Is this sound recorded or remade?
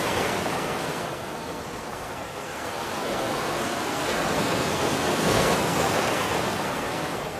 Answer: remade